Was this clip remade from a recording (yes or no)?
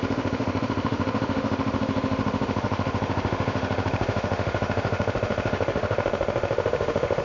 yes